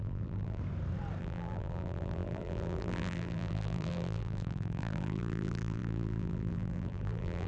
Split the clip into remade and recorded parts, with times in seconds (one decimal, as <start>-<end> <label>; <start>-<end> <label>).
0.0-0.6 remade; 0.6-1.2 recorded; 1.2-7.5 remade